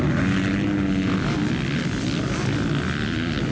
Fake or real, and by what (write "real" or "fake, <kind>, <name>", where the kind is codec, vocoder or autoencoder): real